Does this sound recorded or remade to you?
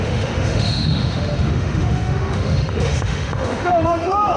remade